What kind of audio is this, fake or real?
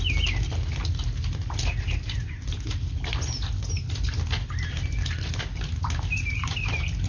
real